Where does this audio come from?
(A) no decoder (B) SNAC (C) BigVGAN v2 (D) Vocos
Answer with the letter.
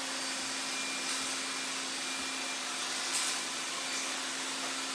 A